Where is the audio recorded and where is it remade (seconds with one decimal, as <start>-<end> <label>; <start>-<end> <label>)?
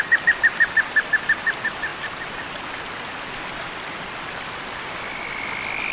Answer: 0.0-5.9 recorded